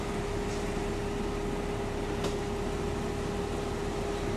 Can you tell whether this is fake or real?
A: real